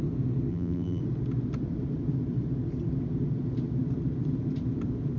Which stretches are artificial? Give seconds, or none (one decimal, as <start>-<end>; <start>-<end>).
0.5-1.0